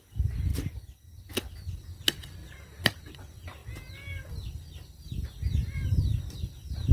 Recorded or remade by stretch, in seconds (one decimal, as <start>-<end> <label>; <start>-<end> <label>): 0.0-0.5 recorded; 0.5-1.5 remade; 1.5-2.4 recorded; 2.4-3.1 remade; 3.1-6.9 recorded